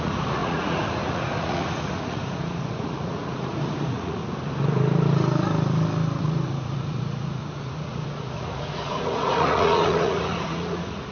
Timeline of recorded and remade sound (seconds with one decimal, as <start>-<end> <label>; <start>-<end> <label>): 0.0-4.2 remade; 4.2-6.2 recorded; 6.2-11.1 remade